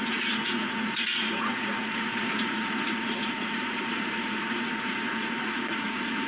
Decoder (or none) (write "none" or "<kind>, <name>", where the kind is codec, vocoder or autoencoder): vocoder, Vocos